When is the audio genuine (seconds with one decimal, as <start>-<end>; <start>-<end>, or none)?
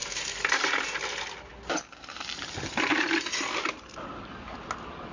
0.0-5.1